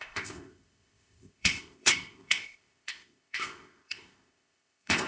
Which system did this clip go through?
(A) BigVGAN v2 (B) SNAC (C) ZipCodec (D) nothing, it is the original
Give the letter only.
C